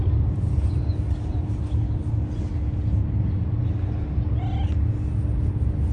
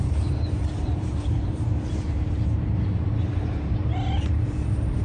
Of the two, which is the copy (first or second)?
second